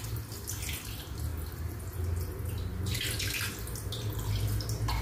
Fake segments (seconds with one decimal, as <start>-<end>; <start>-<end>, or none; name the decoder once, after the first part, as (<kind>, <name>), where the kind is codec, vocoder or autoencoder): none